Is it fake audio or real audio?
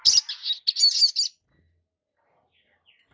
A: real